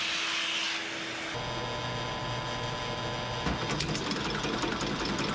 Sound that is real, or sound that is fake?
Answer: real